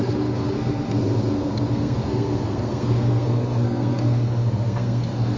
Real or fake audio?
fake